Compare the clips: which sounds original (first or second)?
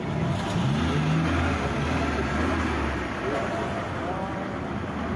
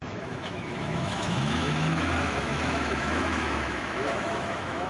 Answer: first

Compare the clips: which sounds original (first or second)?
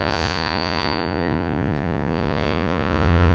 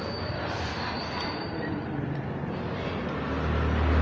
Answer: second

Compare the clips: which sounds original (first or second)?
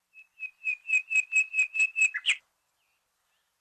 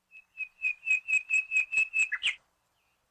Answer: first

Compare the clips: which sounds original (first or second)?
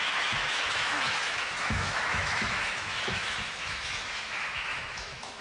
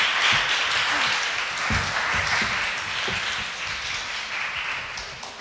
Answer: second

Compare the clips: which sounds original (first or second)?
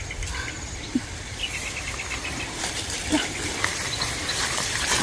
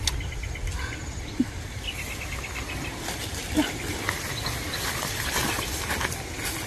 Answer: second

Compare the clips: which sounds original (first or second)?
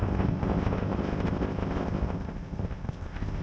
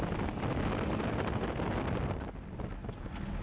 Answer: second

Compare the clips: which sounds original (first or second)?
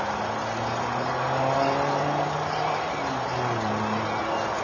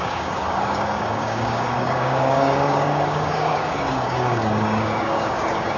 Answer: first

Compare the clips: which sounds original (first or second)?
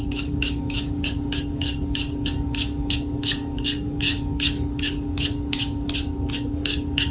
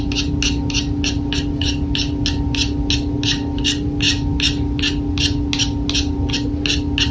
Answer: second